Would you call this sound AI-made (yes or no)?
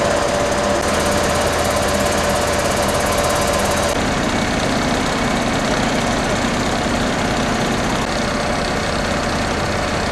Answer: no